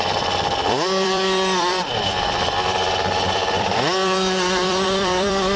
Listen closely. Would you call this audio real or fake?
fake